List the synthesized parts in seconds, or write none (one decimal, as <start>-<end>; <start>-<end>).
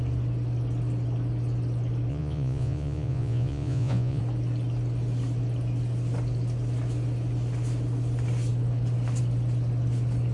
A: 2.1-4.2